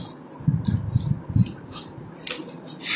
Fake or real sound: real